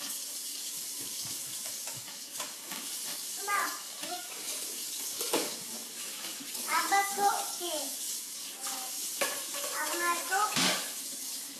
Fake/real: fake